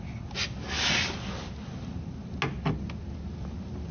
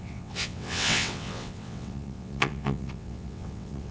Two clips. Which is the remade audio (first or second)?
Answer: second